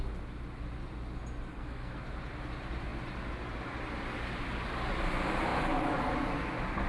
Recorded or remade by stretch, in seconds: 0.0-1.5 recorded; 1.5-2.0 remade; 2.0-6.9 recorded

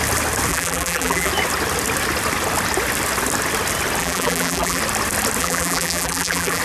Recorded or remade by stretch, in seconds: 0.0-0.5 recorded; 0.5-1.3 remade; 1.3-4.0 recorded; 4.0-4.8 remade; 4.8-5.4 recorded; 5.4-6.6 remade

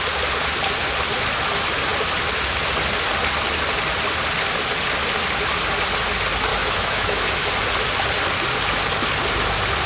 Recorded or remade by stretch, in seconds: 0.0-6.5 recorded; 6.5-7.4 remade; 7.4-9.9 recorded